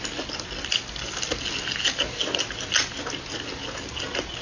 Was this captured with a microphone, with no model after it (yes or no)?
yes